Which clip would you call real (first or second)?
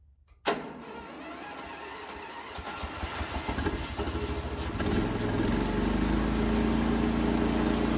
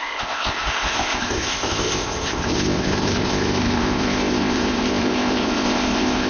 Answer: first